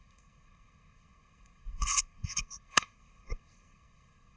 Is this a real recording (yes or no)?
no